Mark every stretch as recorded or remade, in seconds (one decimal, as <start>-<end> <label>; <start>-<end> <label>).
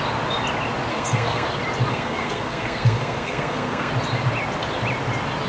0.0-0.9 recorded; 0.9-1.5 remade; 1.5-1.9 recorded; 1.9-3.9 remade; 3.9-5.5 recorded